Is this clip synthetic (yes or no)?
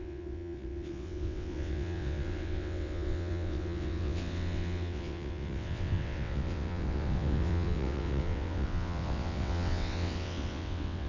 yes